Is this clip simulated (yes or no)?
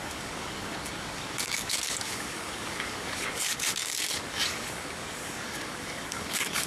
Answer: yes